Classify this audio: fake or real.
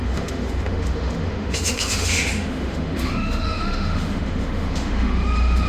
fake